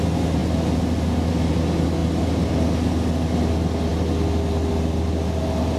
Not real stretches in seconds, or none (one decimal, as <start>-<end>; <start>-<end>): none